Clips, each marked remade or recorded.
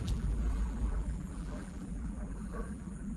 remade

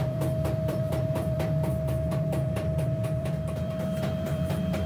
remade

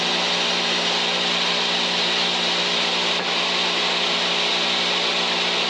recorded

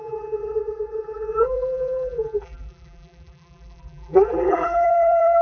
remade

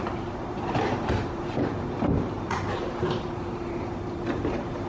remade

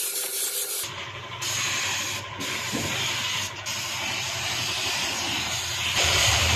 remade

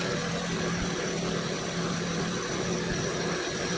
recorded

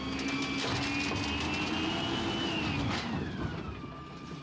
recorded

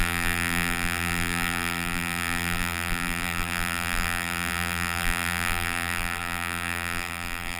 remade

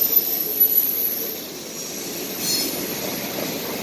recorded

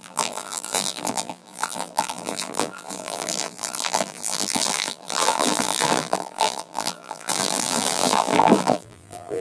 remade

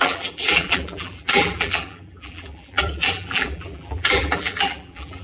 remade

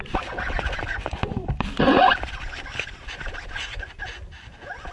recorded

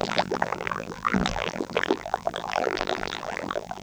remade